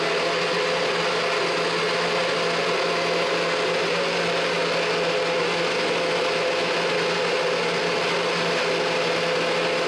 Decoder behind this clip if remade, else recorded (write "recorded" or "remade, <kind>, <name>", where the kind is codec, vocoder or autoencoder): recorded